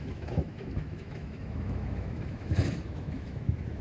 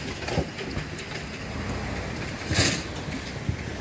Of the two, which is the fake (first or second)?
first